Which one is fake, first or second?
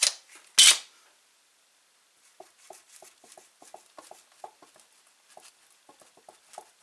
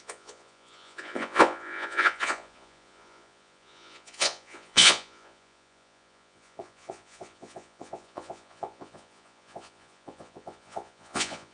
second